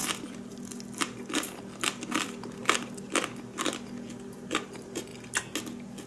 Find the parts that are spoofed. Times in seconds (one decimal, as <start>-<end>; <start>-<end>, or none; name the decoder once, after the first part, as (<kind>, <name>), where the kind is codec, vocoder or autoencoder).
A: none